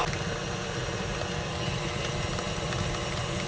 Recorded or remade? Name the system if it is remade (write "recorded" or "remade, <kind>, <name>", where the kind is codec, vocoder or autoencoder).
recorded